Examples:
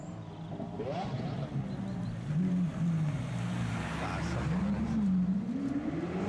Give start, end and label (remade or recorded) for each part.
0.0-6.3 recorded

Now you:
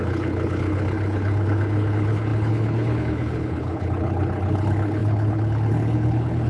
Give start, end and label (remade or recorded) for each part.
0.0-6.5 remade

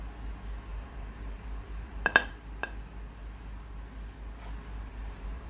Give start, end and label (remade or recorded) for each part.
0.0-0.7 recorded; 0.7-2.3 remade; 2.3-4.9 recorded; 4.9-5.5 remade

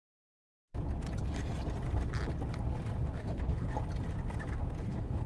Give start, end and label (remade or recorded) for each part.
0.0-3.2 recorded; 3.2-3.7 remade; 3.7-4.8 recorded; 4.8-5.3 remade

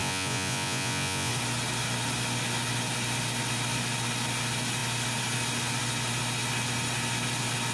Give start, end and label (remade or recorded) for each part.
0.0-1.3 remade; 1.3-7.7 recorded

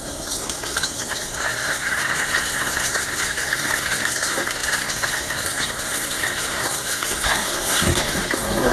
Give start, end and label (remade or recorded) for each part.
0.0-8.7 remade

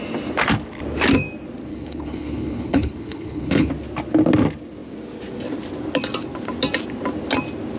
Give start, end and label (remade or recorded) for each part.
0.0-1.7 recorded; 1.7-3.7 remade; 3.7-7.8 recorded

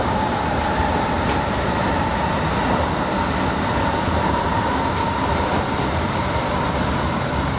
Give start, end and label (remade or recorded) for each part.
0.0-2.1 remade; 2.1-3.9 recorded; 3.9-7.6 remade